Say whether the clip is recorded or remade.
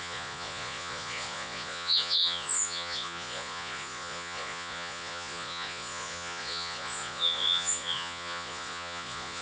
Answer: remade